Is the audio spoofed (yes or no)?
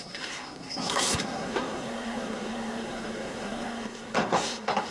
yes